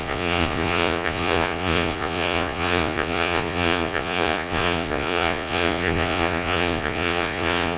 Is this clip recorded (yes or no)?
no